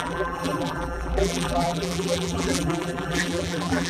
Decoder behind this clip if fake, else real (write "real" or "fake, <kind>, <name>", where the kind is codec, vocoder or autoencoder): fake, vocoder, BigVGAN v2